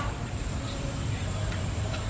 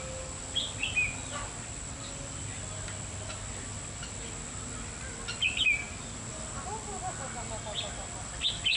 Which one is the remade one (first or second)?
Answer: first